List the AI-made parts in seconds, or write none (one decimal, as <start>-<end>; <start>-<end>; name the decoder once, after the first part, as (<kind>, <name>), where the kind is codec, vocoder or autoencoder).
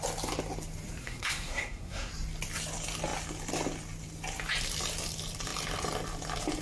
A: 1.0-2.1 (codec, SNAC)